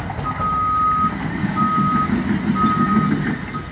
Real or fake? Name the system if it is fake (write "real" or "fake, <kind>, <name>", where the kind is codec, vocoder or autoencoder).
real